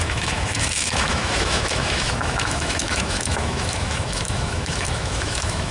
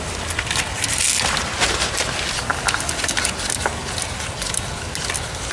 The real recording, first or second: second